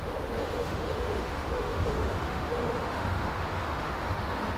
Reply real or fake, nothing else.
fake